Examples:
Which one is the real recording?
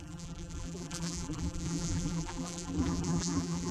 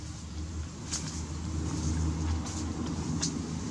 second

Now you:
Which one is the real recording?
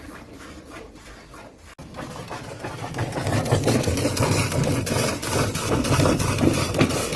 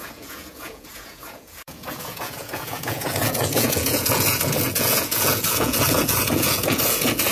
first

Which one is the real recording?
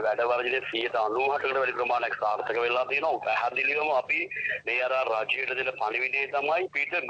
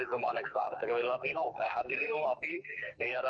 first